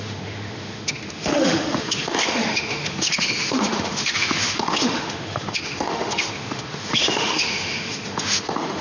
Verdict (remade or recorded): remade